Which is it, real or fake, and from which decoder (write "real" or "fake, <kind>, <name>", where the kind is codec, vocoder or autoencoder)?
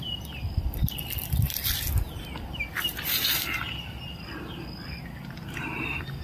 real